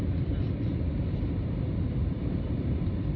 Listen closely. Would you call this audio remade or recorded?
recorded